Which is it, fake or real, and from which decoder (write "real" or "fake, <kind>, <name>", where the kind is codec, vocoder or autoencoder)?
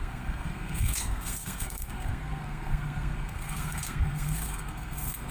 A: fake, codec, SNAC